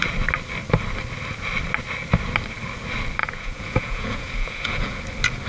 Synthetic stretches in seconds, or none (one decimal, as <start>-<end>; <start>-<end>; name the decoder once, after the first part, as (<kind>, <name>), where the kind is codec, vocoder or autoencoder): 3.2-5.0 (vocoder, Vocos)